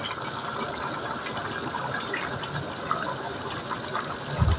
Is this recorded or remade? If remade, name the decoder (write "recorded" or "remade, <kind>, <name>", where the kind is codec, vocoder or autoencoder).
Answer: recorded